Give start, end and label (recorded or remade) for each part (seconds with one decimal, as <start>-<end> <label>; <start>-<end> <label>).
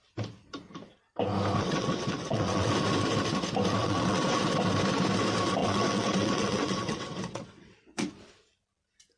0.0-1.6 recorded; 1.6-2.7 remade; 2.7-3.8 recorded; 3.8-4.4 remade; 4.4-5.6 recorded; 5.6-8.1 remade; 8.1-9.2 recorded